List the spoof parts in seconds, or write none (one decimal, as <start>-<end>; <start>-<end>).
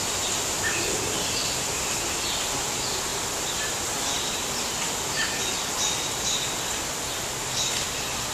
none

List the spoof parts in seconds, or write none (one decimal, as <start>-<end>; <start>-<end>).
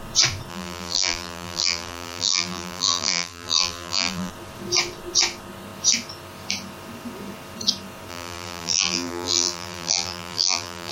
0.5-4.3; 8.1-10.9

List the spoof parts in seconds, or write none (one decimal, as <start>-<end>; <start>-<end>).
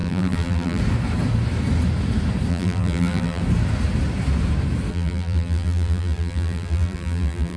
0.0-0.8; 2.5-3.4; 4.9-7.6